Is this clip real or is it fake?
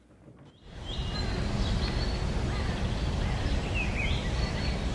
real